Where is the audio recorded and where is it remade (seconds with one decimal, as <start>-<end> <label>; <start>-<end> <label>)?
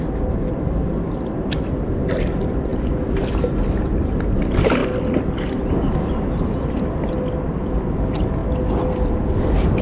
0.0-9.8 recorded